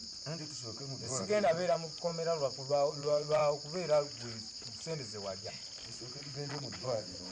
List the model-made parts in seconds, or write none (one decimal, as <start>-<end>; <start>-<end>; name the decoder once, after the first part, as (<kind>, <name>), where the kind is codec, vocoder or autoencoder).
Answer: 1.0-2.1 (vocoder, Vocos); 2.7-3.4; 6.0-7.3